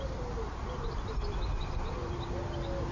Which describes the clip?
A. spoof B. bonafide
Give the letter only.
B